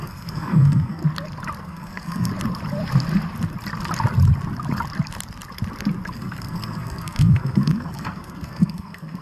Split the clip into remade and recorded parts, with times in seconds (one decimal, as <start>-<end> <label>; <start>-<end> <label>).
0.0-1.0 remade; 1.0-1.6 recorded; 1.6-2.3 remade; 2.3-6.1 recorded; 6.1-9.2 remade